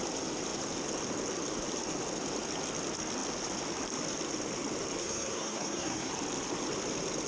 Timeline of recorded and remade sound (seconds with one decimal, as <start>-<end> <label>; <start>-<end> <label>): 0.0-5.0 recorded; 5.0-6.1 remade; 6.1-7.3 recorded